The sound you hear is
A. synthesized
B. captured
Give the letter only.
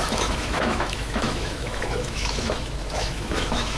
A